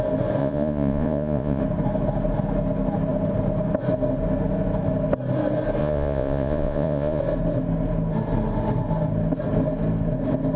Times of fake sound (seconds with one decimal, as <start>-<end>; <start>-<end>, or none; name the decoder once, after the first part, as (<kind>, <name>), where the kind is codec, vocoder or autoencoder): 0.4-1.6 (vocoder, Vocos); 5.8-7.2